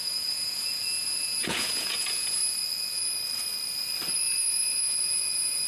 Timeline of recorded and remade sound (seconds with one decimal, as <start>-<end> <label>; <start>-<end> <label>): 0.0-2.4 remade; 2.4-4.7 recorded; 4.7-5.7 remade